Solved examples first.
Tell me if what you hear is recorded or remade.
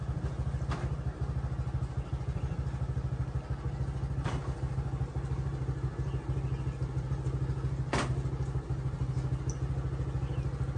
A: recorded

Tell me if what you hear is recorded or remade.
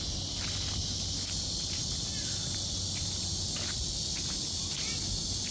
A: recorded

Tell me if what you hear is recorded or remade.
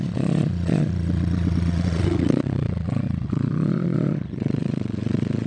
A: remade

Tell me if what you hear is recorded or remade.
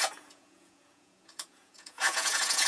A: remade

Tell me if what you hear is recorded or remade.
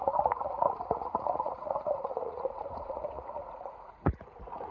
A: remade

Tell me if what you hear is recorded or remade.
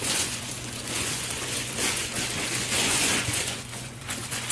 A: remade